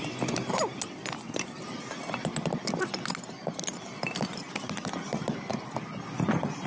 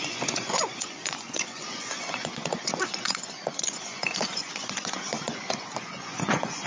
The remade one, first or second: second